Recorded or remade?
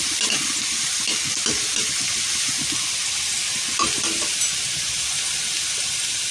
recorded